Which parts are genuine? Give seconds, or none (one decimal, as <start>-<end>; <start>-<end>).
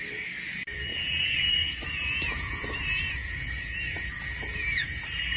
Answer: 0.0-0.9; 4.1-4.5; 5.0-5.4